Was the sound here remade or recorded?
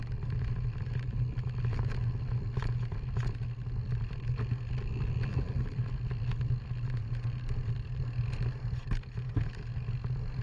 recorded